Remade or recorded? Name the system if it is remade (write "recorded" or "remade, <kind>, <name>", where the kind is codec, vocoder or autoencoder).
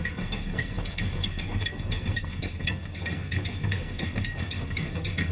remade, codec, SNAC